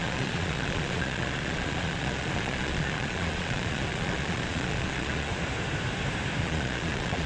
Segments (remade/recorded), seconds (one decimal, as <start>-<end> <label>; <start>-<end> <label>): 0.0-5.3 remade; 5.3-6.4 recorded; 6.4-7.3 remade